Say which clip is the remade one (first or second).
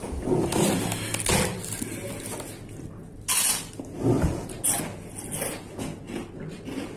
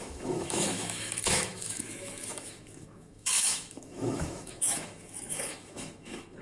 second